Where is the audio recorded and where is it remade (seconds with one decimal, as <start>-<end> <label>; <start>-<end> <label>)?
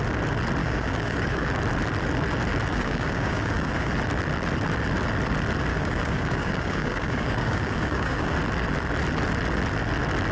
0.0-0.6 recorded; 0.6-1.5 remade; 1.5-2.7 recorded; 2.7-3.9 remade; 3.9-5.7 recorded; 5.7-8.3 remade; 8.3-10.3 recorded